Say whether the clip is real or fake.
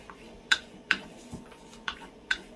fake